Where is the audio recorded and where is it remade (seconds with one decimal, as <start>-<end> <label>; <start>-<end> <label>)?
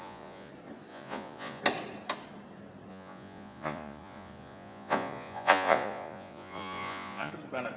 0.0-0.5 remade; 0.5-0.9 recorded; 0.9-1.6 remade; 1.6-2.9 recorded; 2.9-7.3 remade; 7.3-7.8 recorded